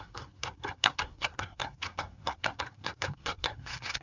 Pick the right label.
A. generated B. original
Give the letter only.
A